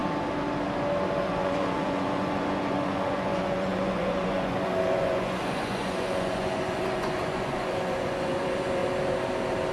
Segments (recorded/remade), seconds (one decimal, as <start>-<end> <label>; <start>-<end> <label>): 0.0-1.2 recorded; 1.2-8.8 remade; 8.8-9.7 recorded